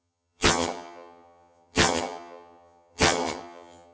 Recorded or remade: remade